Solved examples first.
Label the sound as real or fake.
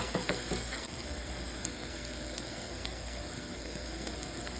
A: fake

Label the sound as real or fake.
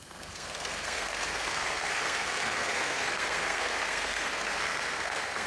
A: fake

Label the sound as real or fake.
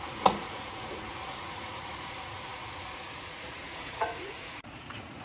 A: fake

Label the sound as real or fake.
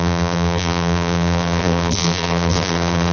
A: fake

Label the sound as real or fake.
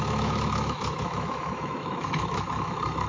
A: fake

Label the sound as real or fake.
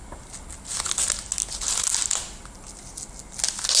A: real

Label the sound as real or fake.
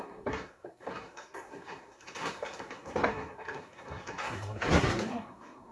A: fake